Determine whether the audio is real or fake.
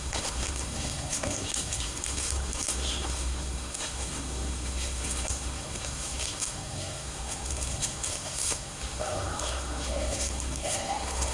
fake